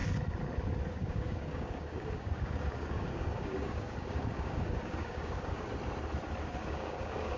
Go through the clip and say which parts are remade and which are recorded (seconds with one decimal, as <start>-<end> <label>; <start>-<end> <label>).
0.0-0.9 recorded; 0.9-5.7 remade; 5.7-6.4 recorded; 6.4-7.4 remade